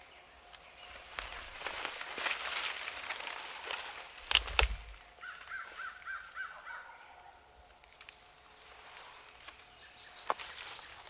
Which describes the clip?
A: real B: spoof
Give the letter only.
A